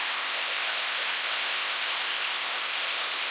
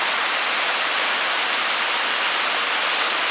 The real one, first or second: second